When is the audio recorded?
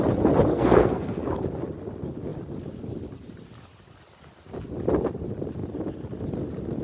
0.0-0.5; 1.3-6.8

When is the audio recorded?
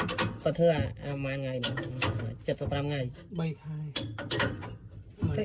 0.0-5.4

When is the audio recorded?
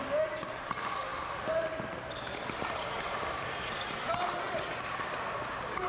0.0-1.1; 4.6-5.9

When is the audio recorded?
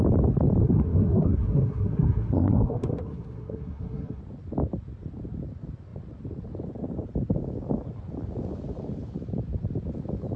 0.0-0.6; 4.2-10.4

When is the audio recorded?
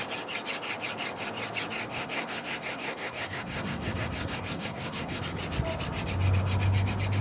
0.0-1.9; 5.2-7.2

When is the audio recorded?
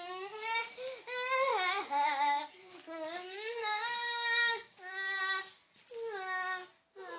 0.0-1.5; 2.4-3.2; 5.2-7.2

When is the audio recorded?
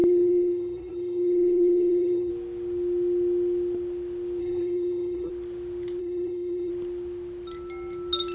2.3-4.4; 5.3-6.0; 6.7-8.3